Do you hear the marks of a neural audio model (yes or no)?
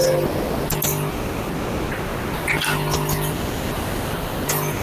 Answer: no